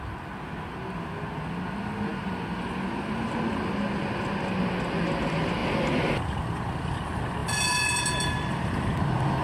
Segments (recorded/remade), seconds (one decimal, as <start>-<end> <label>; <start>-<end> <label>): 0.0-9.4 recorded